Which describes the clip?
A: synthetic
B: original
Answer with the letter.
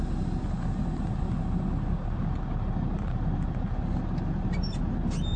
B